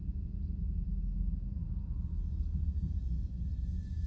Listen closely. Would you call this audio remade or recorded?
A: recorded